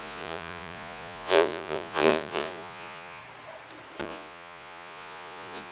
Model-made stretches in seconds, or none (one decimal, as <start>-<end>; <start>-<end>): 0.0-3.2; 4.0-5.7